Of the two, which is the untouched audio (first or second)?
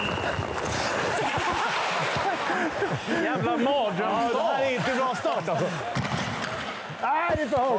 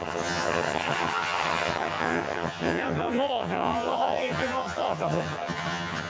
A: first